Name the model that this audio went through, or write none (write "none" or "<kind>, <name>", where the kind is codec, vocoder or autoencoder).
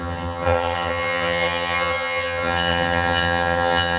vocoder, HiFi-GAN